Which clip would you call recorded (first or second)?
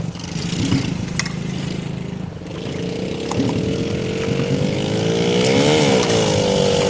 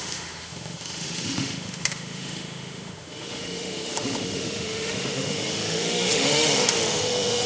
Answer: first